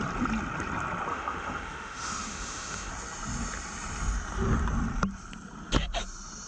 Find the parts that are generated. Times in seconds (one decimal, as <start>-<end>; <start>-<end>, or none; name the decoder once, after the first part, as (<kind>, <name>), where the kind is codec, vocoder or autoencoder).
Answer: 1.1-2.9 (autoencoder, DAC-VAE)